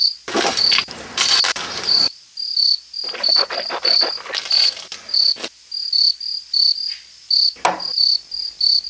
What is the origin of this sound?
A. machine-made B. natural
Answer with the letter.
B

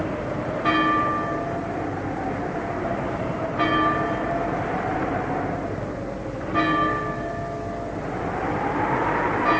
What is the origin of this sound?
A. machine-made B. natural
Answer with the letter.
B